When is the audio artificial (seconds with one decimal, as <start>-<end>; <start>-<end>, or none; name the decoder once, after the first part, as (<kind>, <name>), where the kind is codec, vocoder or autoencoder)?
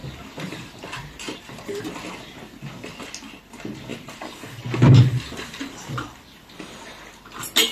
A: 0.0-1.9 (vocoder, BigVGAN v2); 3.9-6.8